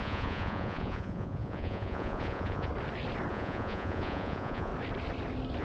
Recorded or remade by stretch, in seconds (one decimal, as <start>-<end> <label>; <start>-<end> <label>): 0.0-2.7 remade; 2.7-3.3 recorded; 3.3-4.7 remade; 4.7-5.6 recorded

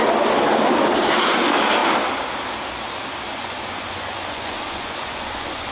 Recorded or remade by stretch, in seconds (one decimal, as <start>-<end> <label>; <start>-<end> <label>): 0.0-3.3 recorded; 3.3-5.7 remade